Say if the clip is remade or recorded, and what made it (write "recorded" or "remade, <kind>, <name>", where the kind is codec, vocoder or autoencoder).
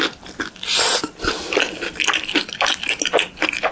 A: recorded